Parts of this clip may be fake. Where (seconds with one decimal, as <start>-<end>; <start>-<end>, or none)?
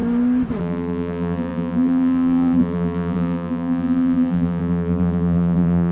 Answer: 0.6-5.9